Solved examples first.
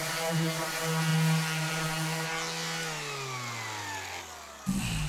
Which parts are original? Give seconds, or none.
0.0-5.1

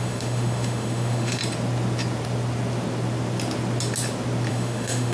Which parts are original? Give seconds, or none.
1.4-4.5

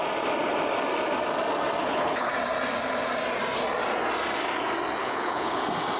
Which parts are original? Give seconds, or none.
0.0-1.8; 2.3-5.0; 5.6-6.0

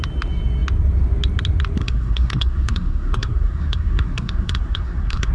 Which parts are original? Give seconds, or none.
0.0-1.8

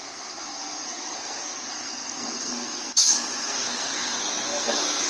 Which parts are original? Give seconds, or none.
none

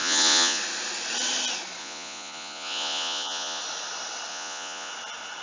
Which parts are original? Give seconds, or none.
0.6-1.8; 3.6-4.3; 4.9-5.4

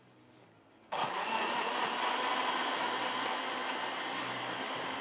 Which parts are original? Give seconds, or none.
1.0-4.0